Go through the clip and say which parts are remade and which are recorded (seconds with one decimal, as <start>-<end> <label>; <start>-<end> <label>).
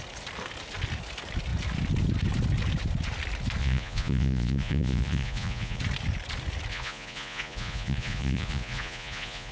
0.0-3.6 recorded; 3.6-5.8 remade; 5.8-6.7 recorded; 6.7-9.5 remade